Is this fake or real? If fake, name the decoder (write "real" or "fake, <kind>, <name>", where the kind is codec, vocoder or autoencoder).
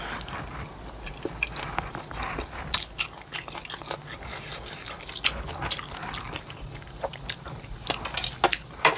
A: real